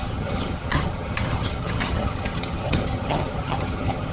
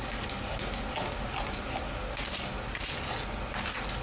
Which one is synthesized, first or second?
first